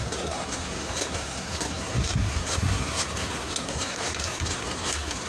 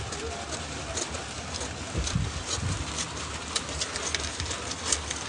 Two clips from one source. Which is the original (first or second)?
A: second